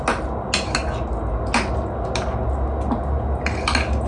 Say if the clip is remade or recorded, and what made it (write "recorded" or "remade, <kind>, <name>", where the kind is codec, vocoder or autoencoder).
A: recorded